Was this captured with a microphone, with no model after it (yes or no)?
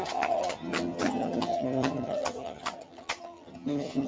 no